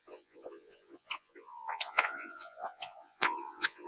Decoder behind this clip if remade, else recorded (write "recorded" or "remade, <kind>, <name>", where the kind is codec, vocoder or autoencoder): remade, vocoder, Vocos